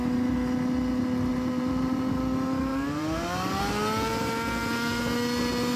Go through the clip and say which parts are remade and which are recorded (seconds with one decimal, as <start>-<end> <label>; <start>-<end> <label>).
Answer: 0.0-1.3 recorded; 1.3-2.1 remade; 2.1-2.7 recorded; 2.7-3.6 remade; 3.6-5.8 recorded